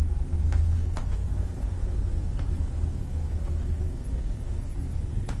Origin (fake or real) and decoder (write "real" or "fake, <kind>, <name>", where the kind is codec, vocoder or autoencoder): fake, codec, SNAC